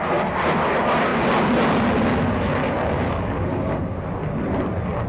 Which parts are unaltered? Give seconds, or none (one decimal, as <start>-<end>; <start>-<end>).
0.0-2.6; 3.8-5.1

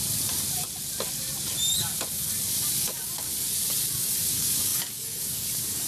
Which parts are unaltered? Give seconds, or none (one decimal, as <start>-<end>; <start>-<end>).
0.0-2.8; 3.3-4.3